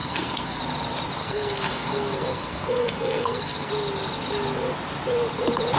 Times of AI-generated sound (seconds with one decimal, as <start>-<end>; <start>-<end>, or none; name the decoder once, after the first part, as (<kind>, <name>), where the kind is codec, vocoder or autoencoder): 0.0-0.6 (codec, SNAC); 1.2-3.7